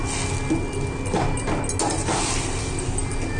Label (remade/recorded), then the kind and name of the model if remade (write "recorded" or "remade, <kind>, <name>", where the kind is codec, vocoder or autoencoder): recorded